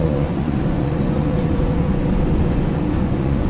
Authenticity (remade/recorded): remade